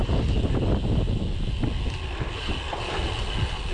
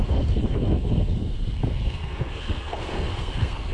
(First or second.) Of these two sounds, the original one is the first